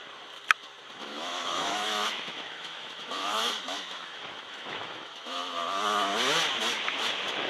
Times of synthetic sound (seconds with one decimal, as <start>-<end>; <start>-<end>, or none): 1.0-5.5